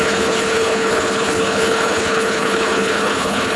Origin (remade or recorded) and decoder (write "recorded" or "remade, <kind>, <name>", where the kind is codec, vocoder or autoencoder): remade, codec, HILCodec